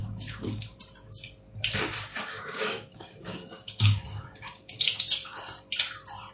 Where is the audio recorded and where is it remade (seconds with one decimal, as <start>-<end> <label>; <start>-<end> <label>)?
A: 0.0-0.8 remade; 0.8-2.1 recorded; 2.1-5.4 remade; 5.4-6.3 recorded